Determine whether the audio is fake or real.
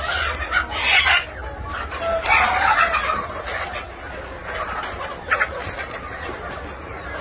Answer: real